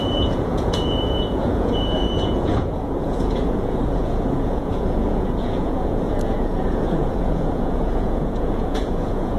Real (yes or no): no